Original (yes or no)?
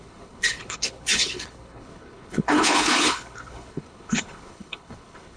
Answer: no